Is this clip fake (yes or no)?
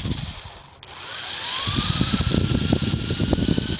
no